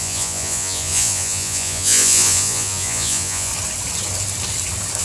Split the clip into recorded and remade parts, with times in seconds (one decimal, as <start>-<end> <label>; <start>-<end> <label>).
0.0-3.5 remade; 3.5-5.0 recorded